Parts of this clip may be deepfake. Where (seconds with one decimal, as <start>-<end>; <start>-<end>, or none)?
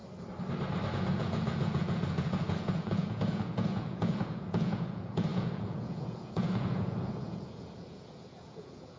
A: 0.9-9.0